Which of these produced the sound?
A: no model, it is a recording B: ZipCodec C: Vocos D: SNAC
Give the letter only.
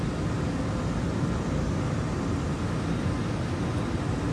A